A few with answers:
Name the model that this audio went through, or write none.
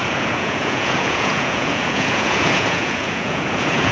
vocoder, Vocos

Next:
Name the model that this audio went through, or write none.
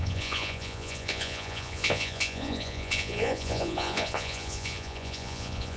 vocoder, Vocos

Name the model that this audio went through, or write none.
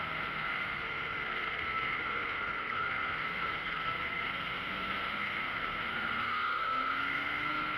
codec, SNAC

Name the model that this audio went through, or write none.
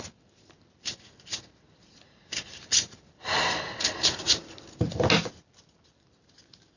none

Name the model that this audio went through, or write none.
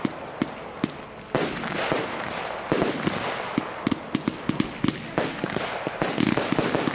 none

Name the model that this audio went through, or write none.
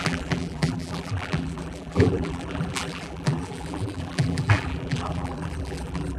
vocoder, BigVGAN v2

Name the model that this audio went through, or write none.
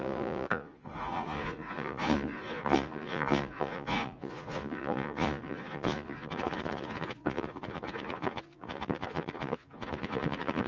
vocoder, Vocos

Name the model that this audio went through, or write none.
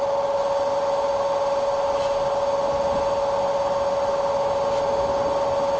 none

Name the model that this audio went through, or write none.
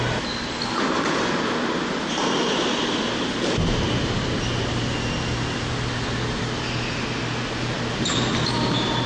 none